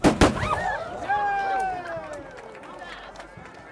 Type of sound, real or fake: real